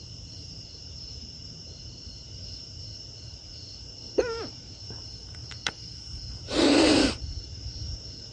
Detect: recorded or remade remade